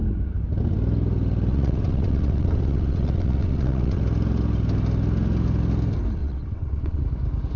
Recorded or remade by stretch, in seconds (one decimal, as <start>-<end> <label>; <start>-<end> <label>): 0.0-1.5 recorded; 1.5-4.0 remade; 4.0-6.2 recorded; 6.2-7.0 remade; 7.0-7.6 recorded